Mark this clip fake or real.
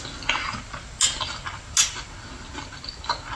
real